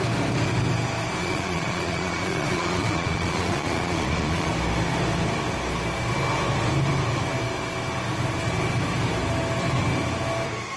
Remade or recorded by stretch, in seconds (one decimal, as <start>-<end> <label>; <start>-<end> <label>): 0.0-1.2 recorded; 1.2-4.5 remade; 4.5-10.8 recorded